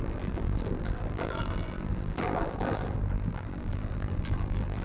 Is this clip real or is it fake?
fake